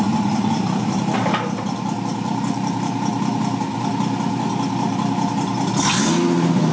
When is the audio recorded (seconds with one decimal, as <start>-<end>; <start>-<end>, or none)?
3.1-6.7